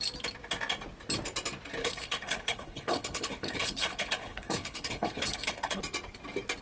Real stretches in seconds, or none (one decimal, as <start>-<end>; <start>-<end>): 0.0-1.8; 5.8-6.6